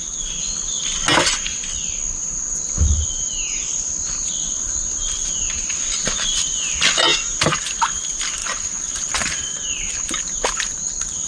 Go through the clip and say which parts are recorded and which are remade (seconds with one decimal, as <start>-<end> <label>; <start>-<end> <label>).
0.0-11.3 recorded